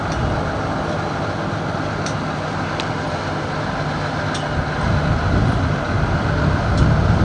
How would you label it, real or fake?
real